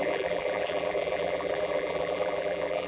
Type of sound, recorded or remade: remade